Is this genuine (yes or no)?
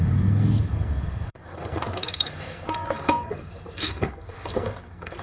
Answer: no